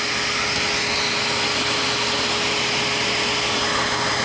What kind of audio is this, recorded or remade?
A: recorded